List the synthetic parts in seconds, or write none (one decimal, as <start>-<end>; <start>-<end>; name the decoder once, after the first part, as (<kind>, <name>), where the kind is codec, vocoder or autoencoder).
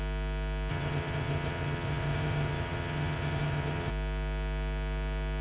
0.7-3.9 (vocoder, HiFi-GAN)